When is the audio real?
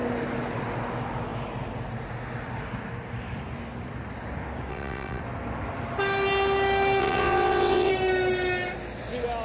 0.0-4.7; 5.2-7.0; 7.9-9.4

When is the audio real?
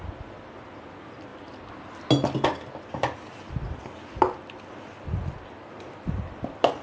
0.0-6.8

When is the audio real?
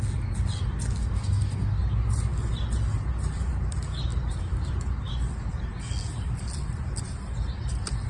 0.0-1.0; 1.8-8.1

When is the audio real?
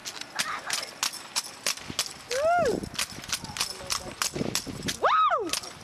0.0-5.8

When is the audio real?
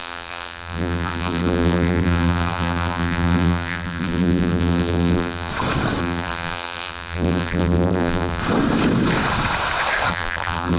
5.5-6.0; 8.4-10.1